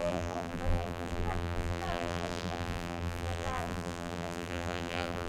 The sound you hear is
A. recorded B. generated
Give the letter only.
B